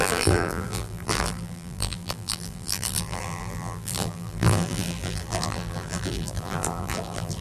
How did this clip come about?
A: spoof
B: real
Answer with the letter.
A